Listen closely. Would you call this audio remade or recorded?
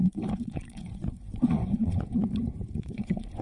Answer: remade